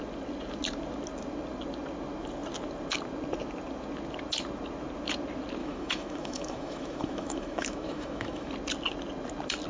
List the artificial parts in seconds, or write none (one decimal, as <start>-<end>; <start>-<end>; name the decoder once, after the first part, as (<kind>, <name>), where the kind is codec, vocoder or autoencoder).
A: 5.6-8.5 (autoencoder, DAC-VAE)